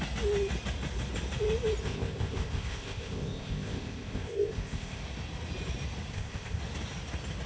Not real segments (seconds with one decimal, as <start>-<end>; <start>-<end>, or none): 1.8-5.0; 6.1-6.6